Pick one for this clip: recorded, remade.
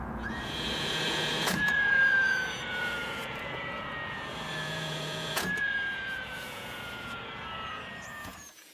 remade